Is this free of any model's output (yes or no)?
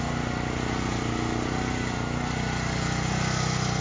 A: yes